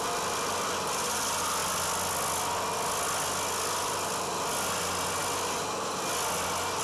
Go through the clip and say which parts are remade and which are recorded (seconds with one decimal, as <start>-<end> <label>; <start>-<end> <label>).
0.0-6.8 recorded